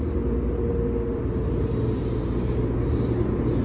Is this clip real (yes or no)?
yes